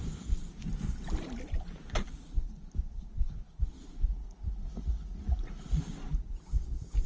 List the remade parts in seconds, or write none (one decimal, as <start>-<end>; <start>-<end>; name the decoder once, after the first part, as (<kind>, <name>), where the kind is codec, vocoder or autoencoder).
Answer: 4.1-5.8 (vocoder, Vocos)